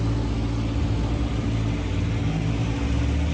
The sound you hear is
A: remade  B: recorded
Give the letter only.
B